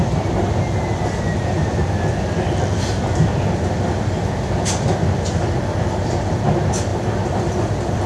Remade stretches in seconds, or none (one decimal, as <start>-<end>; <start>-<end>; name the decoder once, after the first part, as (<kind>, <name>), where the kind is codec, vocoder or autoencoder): 6.9-8.1 (vocoder, BigVGAN v2)